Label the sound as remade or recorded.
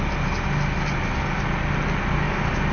recorded